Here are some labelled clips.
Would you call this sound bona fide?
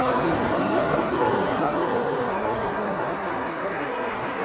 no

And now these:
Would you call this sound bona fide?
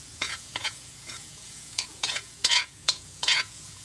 no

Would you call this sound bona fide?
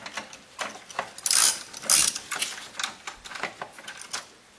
yes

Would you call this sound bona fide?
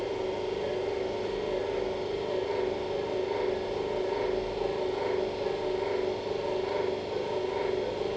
yes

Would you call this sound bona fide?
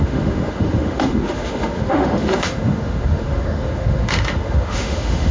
no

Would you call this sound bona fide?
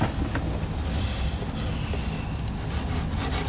yes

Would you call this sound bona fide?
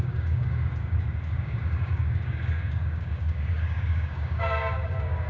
no